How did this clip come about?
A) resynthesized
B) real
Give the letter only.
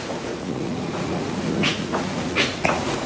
A